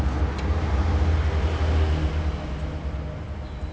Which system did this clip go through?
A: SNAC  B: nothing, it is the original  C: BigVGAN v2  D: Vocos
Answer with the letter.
B